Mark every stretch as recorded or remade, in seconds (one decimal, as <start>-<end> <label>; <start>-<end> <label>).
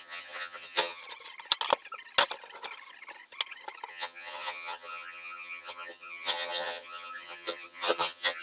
0.0-1.0 remade; 1.0-3.9 recorded; 3.9-8.4 remade